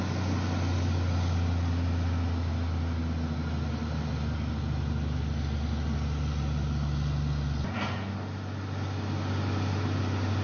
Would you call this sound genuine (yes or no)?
yes